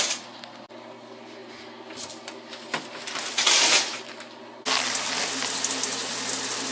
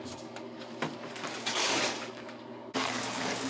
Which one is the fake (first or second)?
second